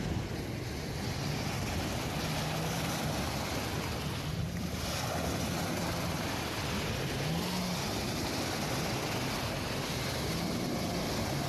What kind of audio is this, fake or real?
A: real